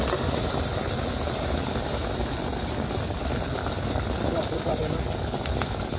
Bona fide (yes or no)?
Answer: yes